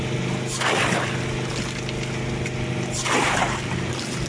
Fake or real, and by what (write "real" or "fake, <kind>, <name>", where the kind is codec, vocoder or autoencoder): real